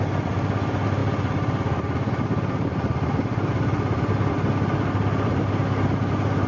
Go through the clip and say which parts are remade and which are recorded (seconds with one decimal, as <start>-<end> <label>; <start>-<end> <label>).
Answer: 0.0-6.5 recorded